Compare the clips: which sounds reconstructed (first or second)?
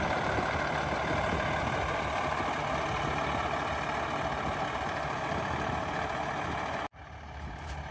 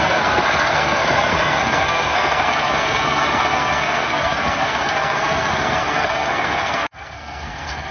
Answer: second